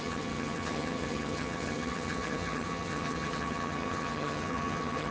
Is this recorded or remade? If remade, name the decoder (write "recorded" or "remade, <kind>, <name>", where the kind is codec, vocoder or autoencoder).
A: remade, vocoder, HiFi-GAN